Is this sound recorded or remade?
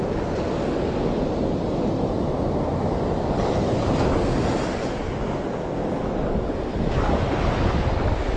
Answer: recorded